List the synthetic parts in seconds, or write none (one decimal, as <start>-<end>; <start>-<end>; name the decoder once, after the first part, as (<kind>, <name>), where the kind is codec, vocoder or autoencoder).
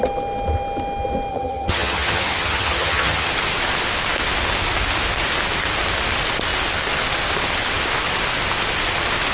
1.3-3.3 (vocoder, HiFi-GAN)